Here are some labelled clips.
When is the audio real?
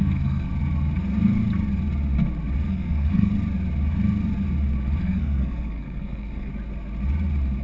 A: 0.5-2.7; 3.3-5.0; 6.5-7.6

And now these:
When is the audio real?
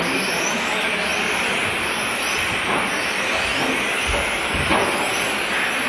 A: 0.0-5.9